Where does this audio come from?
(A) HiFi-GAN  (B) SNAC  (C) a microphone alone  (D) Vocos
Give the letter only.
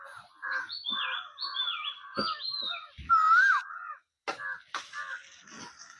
C